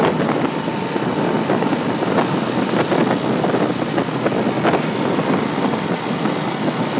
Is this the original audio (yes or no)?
yes